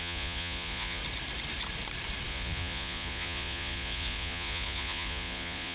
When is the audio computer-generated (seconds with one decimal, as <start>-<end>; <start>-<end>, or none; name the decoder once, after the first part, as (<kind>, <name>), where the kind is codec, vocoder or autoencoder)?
0.0-1.0 (vocoder, Vocos); 2.3-5.7